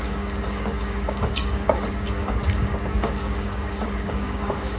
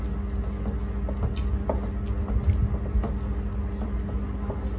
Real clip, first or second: second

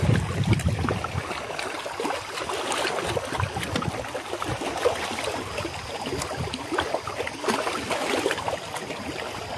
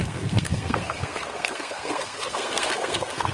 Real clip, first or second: first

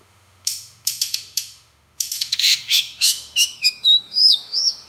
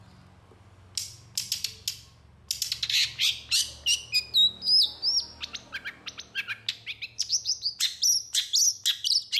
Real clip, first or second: second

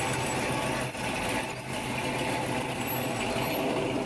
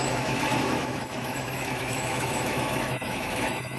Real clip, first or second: first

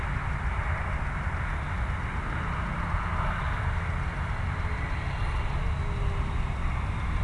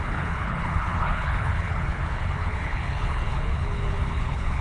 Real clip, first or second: first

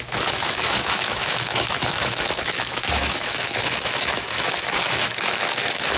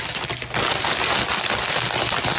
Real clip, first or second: second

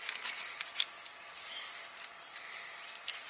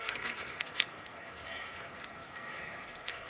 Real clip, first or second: first